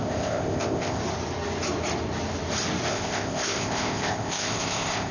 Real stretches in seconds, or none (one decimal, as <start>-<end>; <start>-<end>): 1.0-2.9